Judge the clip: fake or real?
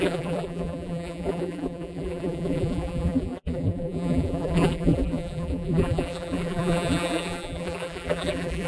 fake